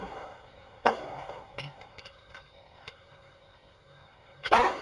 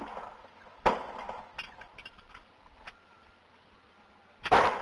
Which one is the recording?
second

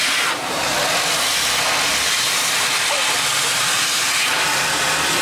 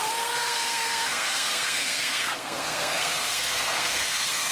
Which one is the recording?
first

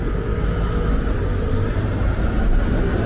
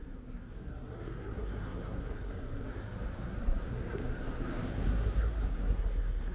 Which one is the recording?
first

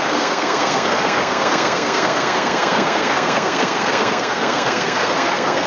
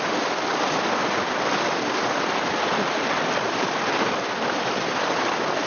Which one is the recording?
second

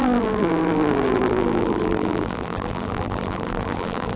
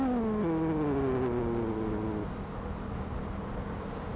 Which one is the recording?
second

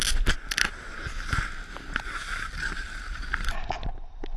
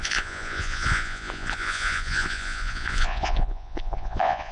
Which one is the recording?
first